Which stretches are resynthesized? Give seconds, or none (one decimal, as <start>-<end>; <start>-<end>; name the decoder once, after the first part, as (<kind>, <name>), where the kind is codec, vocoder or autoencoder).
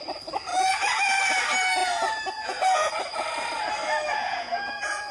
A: 0.5-1.1 (vocoder, Vocos); 1.8-2.9; 4.2-5.1